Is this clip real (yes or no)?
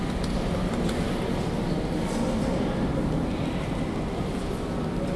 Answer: yes